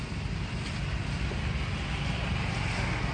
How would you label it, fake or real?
real